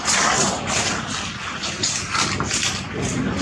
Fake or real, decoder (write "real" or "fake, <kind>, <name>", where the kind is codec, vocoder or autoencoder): real